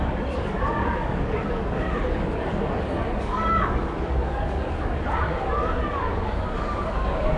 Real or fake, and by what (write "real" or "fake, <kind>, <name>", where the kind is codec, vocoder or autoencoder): fake, codec, DAC